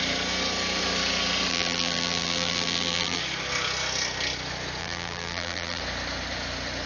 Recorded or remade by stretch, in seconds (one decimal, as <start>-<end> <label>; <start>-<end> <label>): 0.0-1.5 recorded; 1.5-3.2 remade; 3.2-4.8 recorded; 4.8-5.8 remade; 5.8-6.9 recorded